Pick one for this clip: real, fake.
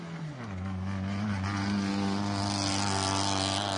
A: real